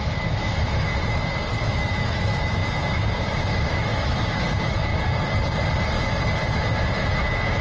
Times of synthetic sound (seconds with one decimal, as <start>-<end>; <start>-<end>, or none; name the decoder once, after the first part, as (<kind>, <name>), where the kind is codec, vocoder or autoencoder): 0.0-0.9 (autoencoder, DAC-VAE); 1.6-4.9; 6.4-7.6